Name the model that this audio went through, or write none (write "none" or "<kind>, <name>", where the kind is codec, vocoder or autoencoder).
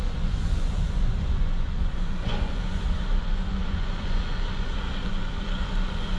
vocoder, Vocos